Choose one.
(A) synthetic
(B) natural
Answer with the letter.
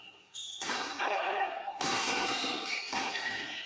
A